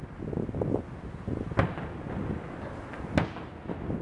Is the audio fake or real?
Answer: real